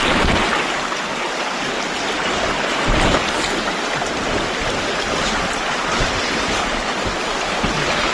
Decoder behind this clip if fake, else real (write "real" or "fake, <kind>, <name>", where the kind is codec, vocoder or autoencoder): real